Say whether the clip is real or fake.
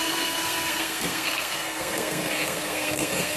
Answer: fake